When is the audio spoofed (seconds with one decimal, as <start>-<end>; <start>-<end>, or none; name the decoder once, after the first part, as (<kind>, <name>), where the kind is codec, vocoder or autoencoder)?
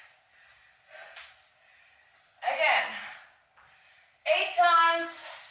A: 0.0-0.6 (vocoder, BigVGAN v2); 3.9-5.5